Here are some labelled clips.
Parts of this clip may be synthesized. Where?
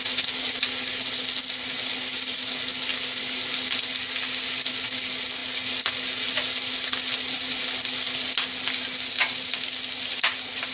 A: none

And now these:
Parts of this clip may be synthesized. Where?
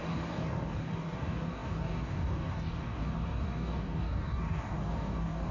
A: 0.0-5.5 (codec, DAC)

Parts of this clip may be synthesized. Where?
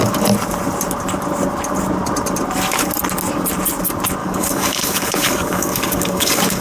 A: 4.2-6.6 (codec, DAC)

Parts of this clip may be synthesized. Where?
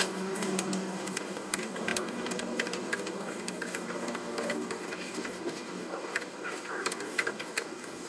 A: 0.0-8.1 (codec, DAC)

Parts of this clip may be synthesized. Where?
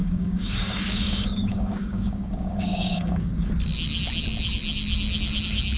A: 0.0-3.5 (codec, DAC)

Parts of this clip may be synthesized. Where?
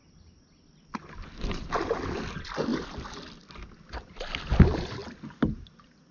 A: none